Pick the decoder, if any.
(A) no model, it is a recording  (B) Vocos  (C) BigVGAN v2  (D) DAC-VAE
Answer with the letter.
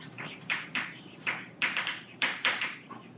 C